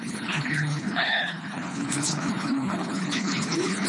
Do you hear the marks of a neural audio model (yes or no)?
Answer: yes